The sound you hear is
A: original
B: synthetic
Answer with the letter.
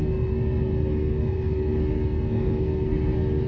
B